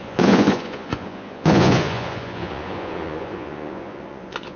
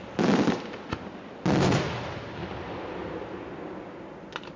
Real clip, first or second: second